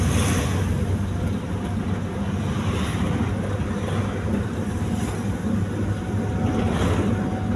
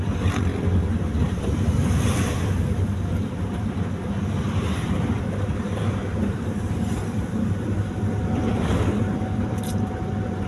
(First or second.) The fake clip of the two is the second